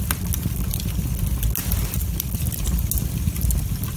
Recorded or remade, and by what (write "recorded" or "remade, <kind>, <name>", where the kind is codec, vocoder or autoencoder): recorded